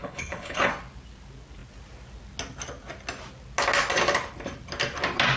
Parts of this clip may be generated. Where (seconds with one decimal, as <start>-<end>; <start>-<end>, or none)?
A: 0.0-0.7